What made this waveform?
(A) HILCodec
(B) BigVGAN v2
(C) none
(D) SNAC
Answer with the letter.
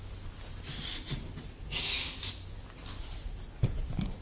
C